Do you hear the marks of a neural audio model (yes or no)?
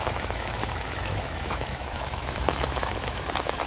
yes